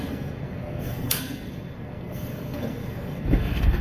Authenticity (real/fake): fake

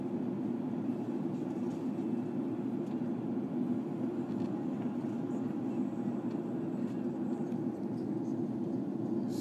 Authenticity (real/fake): real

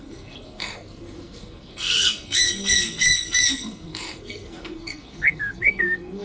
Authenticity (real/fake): fake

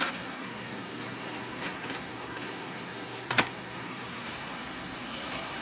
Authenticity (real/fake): fake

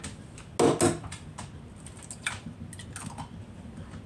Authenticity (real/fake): real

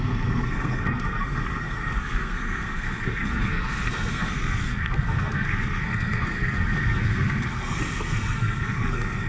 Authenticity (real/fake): fake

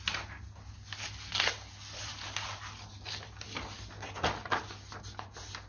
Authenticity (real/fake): real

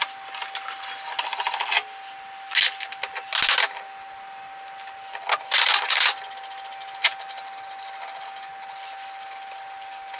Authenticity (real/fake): real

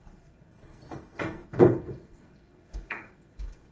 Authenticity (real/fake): fake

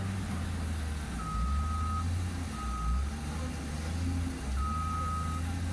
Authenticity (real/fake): real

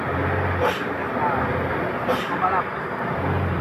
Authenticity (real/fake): real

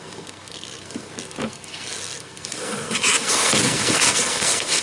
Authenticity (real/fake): fake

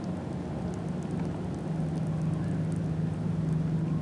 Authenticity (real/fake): real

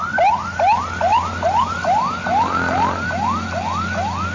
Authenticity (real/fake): real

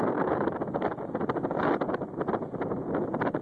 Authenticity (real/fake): real